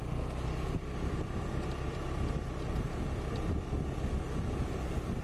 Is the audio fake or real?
real